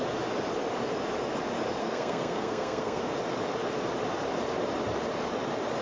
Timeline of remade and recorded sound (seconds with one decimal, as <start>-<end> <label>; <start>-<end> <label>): 0.0-1.8 recorded; 1.8-3.0 remade; 3.0-5.8 recorded